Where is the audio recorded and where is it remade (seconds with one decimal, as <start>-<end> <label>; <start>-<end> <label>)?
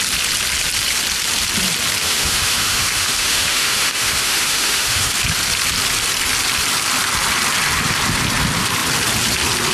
0.0-2.0 recorded; 2.0-5.1 remade; 5.1-9.7 recorded